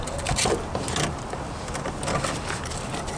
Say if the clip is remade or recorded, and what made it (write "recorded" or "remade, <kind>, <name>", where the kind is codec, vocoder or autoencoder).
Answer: recorded